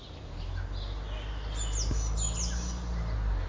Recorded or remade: recorded